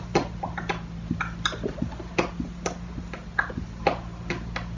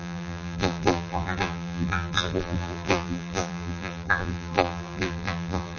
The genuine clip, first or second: first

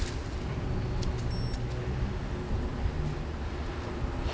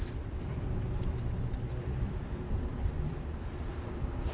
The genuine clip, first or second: first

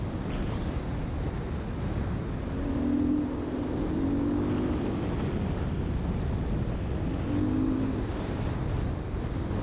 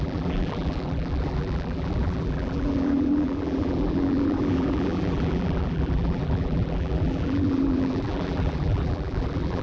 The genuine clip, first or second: first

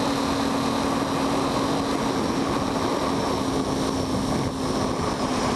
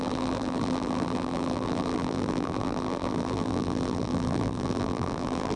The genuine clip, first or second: first